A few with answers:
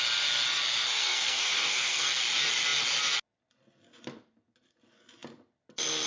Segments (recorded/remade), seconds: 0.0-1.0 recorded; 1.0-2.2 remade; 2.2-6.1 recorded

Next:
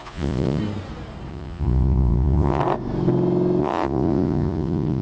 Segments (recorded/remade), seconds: 0.0-0.6 remade; 0.6-1.3 recorded; 1.3-2.6 remade; 2.6-3.6 recorded; 3.6-5.0 remade

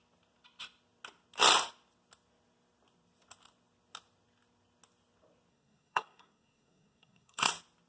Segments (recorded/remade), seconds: 0.0-5.5 recorded; 5.5-7.5 remade; 7.5-7.9 recorded

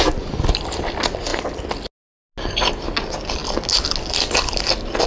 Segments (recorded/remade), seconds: 0.0-5.1 recorded

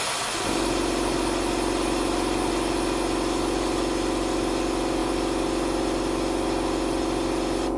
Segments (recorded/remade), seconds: 0.0-7.8 recorded

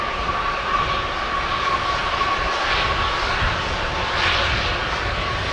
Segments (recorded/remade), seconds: 0.0-5.5 recorded